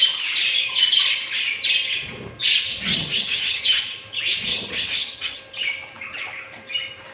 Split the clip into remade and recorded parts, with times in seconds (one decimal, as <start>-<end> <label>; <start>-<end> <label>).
0.0-2.9 recorded; 2.9-3.8 remade; 3.8-4.5 recorded; 4.5-5.4 remade; 5.4-7.1 recorded